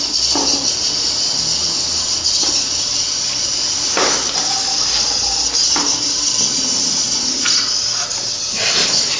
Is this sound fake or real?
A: real